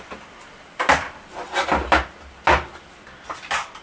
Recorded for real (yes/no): yes